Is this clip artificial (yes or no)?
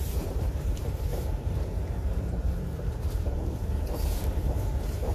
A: yes